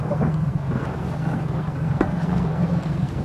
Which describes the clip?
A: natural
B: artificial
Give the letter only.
B